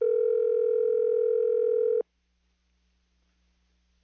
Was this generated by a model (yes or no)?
no